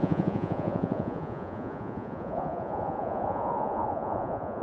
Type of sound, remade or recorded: remade